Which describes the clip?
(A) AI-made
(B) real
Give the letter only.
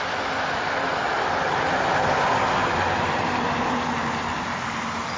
B